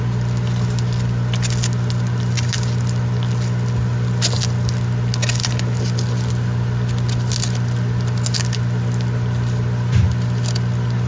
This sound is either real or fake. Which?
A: real